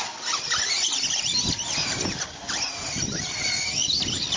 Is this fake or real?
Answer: real